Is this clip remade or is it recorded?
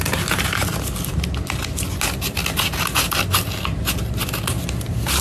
recorded